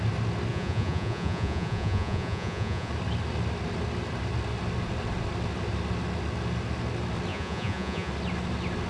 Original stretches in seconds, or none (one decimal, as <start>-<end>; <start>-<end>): 0.0-0.5; 2.9-7.3; 8.1-8.9